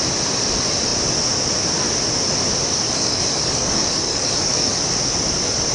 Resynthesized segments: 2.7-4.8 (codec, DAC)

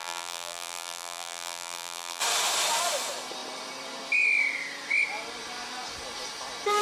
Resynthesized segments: 0.0-2.2 (vocoder, BigVGAN v2)

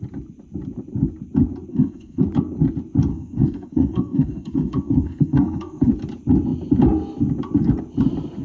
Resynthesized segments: 1.7-2.2 (codec, SNAC); 3.1-5.9

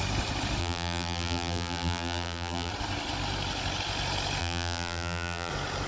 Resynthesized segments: 0.6-2.7 (vocoder, BigVGAN v2); 4.4-5.5

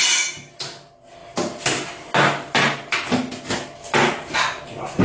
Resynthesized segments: none

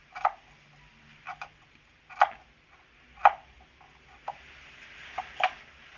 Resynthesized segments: none

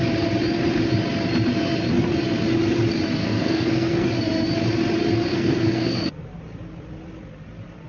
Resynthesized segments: 3.2-4.1 (codec, SNAC); 5.3-6.1

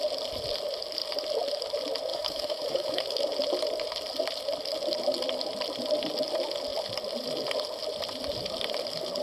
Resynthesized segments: 2.1-3.2 (autoencoder, DAC-VAE)